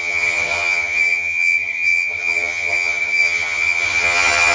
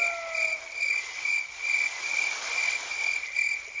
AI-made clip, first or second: first